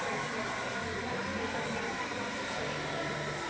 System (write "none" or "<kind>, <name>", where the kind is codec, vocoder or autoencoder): none